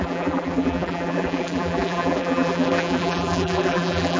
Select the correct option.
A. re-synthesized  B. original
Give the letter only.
A